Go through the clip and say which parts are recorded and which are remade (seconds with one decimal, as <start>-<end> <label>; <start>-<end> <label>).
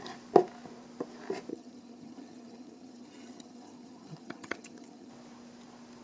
0.0-1.5 recorded; 1.5-5.1 remade; 5.1-6.0 recorded